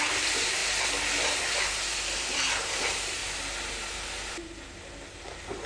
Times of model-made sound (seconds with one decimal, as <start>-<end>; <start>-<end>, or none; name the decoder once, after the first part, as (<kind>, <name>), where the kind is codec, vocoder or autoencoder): none